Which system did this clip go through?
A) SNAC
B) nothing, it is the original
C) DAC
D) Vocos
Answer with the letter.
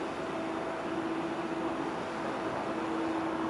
B